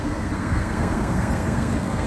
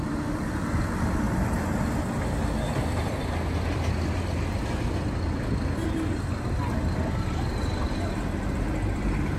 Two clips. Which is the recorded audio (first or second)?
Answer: second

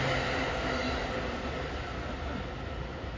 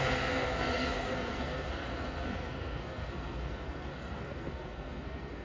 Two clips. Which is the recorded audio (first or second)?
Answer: first